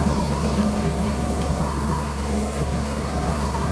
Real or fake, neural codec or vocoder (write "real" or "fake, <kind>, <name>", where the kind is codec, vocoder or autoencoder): fake, codec, SNAC